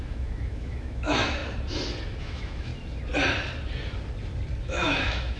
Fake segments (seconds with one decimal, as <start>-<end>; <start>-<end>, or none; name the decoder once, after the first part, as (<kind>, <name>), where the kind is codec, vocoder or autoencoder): 0.0-1.4 (autoencoder, DAC-VAE); 2.2-2.7; 4.6-5.4